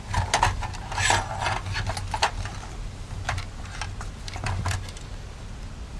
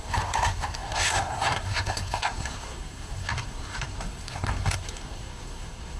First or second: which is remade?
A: second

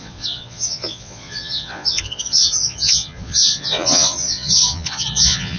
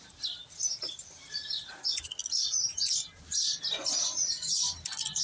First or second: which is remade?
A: first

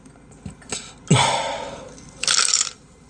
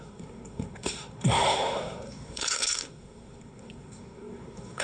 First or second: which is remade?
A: second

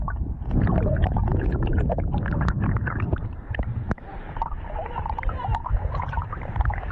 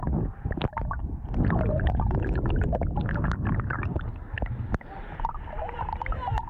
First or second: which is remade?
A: first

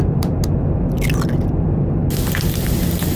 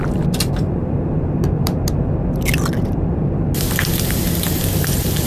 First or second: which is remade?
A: second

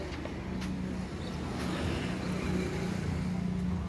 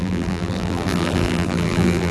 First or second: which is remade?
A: second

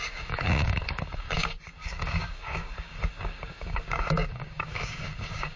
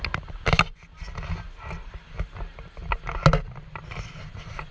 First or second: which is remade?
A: first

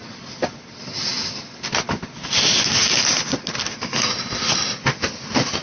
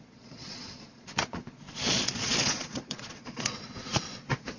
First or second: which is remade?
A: second